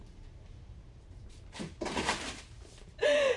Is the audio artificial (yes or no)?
yes